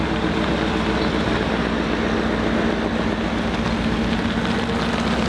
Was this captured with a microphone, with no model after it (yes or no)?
yes